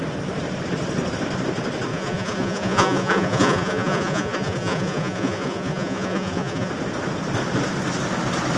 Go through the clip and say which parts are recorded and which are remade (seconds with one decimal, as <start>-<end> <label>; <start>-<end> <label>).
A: 0.0-1.9 recorded; 1.9-6.7 remade; 6.7-8.6 recorded